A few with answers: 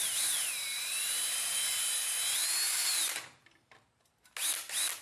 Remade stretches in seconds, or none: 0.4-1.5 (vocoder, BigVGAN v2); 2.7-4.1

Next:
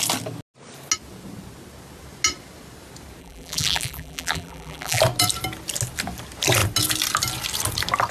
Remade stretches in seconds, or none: 3.2-5.0 (vocoder, BigVGAN v2)

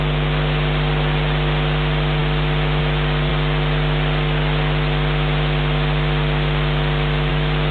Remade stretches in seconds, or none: none

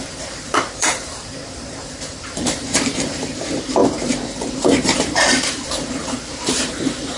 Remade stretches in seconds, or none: 0.0-7.2 (vocoder, BigVGAN v2)

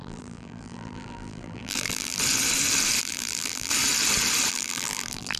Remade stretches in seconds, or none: 0.0-2.2 (vocoder, BigVGAN v2); 3.0-3.7; 4.5-5.4

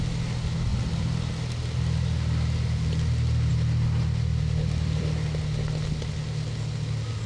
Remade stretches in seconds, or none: 4.3-5.2 (vocoder, BigVGAN v2)

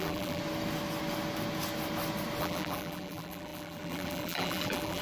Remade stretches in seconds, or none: 0.0-0.4 (vocoder, BigVGAN v2); 2.4-5.0

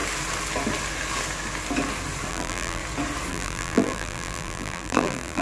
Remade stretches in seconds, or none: 2.3-2.8 (vocoder, BigVGAN v2); 3.3-5.4